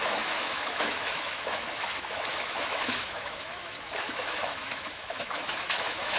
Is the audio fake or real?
fake